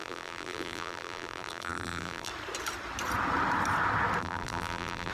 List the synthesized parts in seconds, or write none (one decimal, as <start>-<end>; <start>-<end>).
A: 0.0-2.3; 4.2-5.1